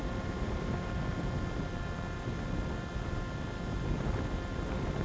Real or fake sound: real